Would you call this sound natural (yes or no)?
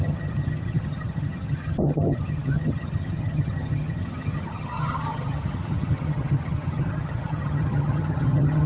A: no